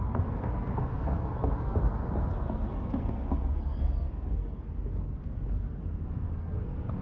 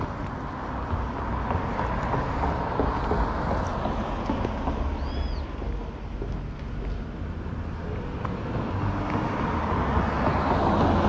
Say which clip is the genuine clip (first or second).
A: second